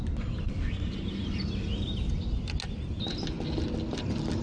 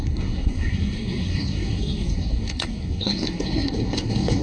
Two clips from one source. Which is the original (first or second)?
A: first